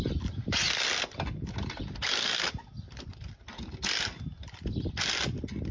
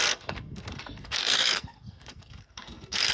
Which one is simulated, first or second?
second